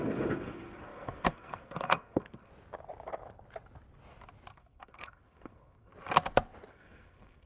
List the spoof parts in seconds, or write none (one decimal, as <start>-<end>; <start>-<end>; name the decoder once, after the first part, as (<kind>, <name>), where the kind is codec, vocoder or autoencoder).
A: 0.0-2.5 (codec, SNAC); 4.5-5.9; 6.7-7.5